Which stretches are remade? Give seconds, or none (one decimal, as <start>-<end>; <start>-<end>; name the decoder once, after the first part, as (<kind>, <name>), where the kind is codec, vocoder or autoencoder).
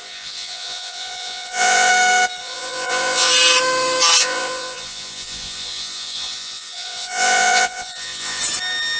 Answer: 0.0-1.9 (vocoder, Vocos); 2.4-3.3; 4.2-8.4